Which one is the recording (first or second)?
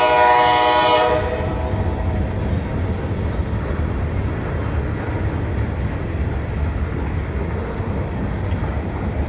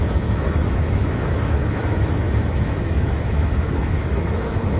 first